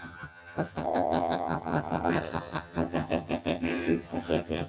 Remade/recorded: remade